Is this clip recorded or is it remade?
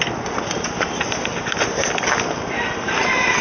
recorded